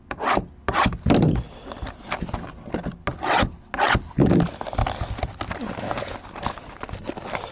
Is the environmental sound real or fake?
real